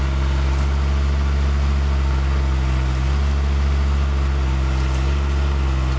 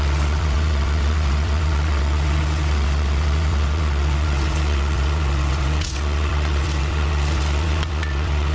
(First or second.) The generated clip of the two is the second